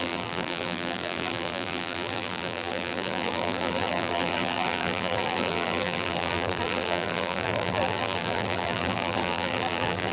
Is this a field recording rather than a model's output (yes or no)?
no